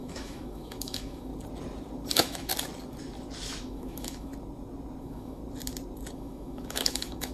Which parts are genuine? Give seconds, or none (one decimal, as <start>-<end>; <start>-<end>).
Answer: 1.3-2.1; 2.5-3.6; 4.3-5.0; 5.4-6.1